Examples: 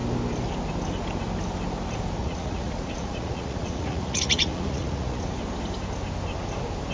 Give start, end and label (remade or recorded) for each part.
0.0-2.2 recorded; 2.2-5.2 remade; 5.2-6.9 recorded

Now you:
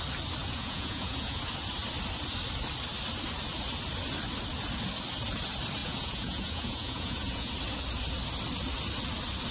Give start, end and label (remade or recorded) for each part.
0.0-0.4 recorded; 0.4-1.4 remade; 1.4-5.8 recorded; 5.8-7.5 remade; 7.5-9.5 recorded

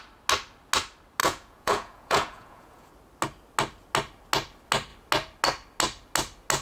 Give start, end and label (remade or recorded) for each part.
0.0-1.2 recorded; 1.2-2.9 remade; 2.9-6.6 recorded

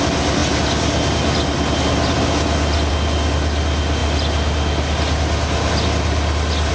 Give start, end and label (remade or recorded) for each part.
0.0-6.7 recorded